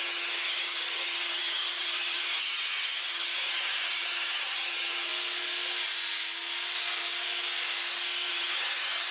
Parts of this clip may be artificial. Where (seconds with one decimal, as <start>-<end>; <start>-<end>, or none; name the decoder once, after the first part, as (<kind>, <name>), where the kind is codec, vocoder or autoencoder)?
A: 0.0-5.1 (vocoder, HiFi-GAN); 8.3-9.1